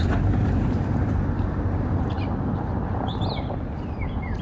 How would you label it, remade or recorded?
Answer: remade